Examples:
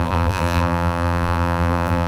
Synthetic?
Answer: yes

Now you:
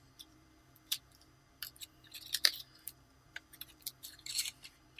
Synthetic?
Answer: yes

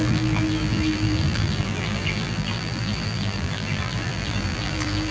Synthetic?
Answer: yes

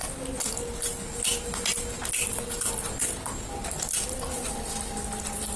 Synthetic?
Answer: no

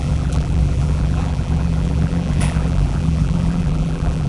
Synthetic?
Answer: yes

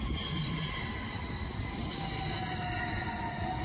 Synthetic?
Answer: no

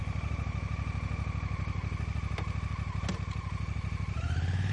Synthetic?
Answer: no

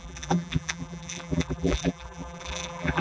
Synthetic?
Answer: yes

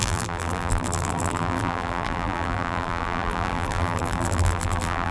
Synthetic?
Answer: yes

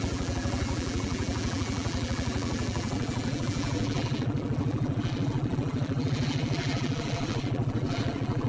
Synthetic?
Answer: yes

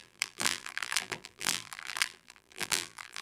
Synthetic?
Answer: yes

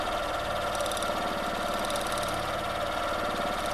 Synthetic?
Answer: no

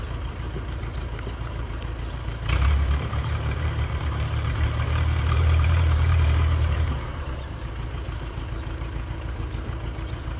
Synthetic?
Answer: yes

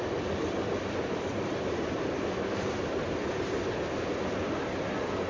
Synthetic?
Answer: no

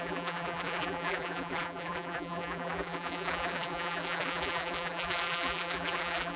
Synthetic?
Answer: yes